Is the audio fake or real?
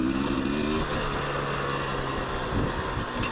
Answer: real